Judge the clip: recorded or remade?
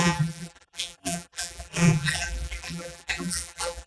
remade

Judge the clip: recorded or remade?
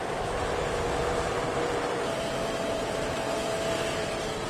remade